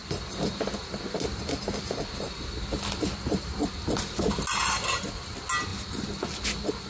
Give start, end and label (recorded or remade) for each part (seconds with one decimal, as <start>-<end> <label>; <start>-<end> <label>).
0.0-6.9 recorded